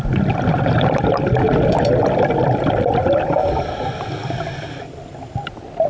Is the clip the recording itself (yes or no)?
yes